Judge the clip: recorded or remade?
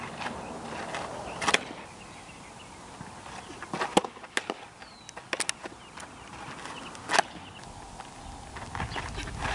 recorded